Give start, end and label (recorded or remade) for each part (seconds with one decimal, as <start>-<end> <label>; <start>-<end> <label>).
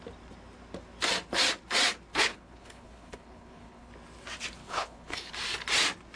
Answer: 0.0-2.1 recorded; 2.1-3.9 remade; 3.9-4.6 recorded; 4.6-5.3 remade; 5.3-6.2 recorded